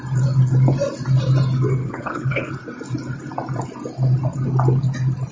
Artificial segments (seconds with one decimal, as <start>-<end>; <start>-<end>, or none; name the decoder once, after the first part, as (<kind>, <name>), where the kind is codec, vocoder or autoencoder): 1.8-2.5 (codec, HILCodec)